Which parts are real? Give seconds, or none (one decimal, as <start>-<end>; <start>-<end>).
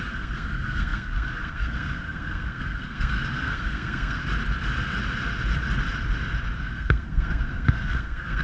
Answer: 4.2-6.6